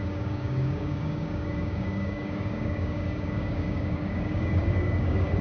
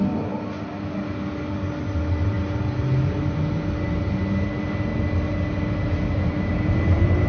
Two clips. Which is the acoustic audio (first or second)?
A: second